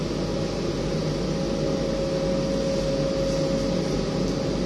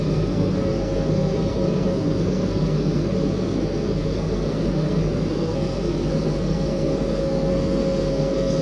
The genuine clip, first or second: first